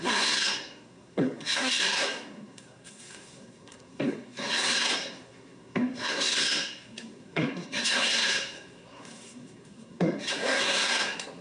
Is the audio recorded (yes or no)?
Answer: no